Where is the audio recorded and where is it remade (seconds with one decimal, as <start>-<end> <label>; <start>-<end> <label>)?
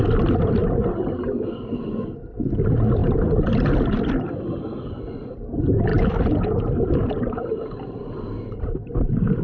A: 0.0-0.6 recorded; 0.6-1.5 remade; 1.5-3.0 recorded; 3.0-4.5 remade; 4.5-5.9 recorded; 5.9-8.1 remade; 8.1-9.4 recorded